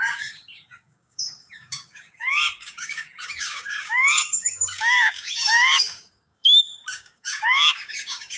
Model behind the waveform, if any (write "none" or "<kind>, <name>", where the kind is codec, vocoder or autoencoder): codec, DAC